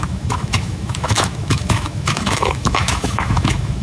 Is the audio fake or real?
fake